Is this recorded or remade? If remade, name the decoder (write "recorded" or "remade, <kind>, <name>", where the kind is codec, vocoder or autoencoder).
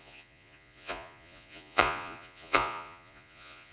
remade, vocoder, Vocos